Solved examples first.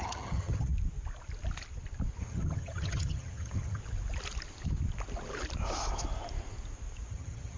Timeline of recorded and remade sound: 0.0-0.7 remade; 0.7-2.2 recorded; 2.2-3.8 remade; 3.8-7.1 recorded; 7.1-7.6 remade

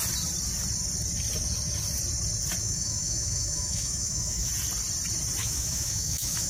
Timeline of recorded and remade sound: 0.0-2.6 recorded; 2.6-4.5 remade; 4.5-5.4 recorded; 5.4-6.5 remade

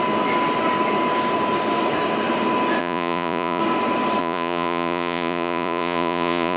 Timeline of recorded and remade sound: 0.0-2.8 recorded; 2.8-3.6 remade; 3.6-4.2 recorded; 4.2-6.6 remade

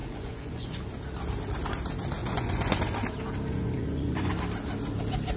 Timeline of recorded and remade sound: 0.0-0.8 remade; 0.8-2.2 recorded; 2.2-2.8 remade; 2.8-3.5 recorded; 3.5-4.3 remade; 4.3-5.4 recorded